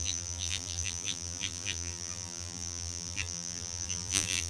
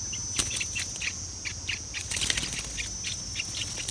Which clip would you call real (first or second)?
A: second